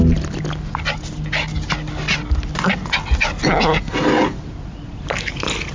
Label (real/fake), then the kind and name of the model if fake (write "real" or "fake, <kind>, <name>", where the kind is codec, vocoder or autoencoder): real